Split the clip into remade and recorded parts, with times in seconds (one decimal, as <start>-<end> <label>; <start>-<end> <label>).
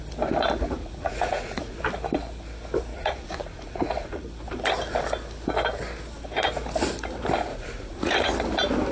0.0-0.8 recorded; 0.8-1.8 remade; 1.8-2.9 recorded; 2.9-4.3 remade; 4.3-7.5 recorded; 7.5-8.3 remade; 8.3-8.9 recorded